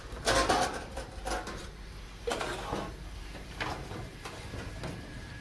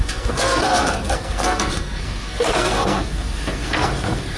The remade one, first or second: second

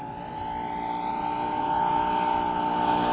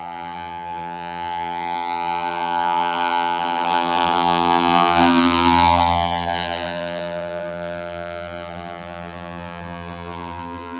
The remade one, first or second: second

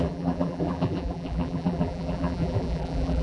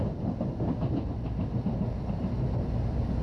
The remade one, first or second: first